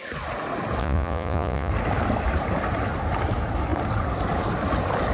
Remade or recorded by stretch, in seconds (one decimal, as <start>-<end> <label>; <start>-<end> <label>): 0.0-0.8 recorded; 0.8-1.7 remade; 1.7-5.1 recorded